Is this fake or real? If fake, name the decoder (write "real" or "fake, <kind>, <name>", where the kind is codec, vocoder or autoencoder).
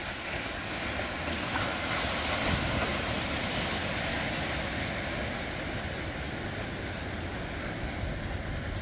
real